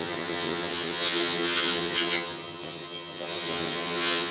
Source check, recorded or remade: remade